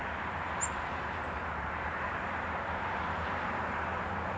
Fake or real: fake